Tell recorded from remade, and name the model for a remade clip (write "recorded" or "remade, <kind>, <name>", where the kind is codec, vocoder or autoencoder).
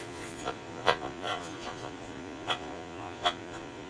remade, vocoder, Vocos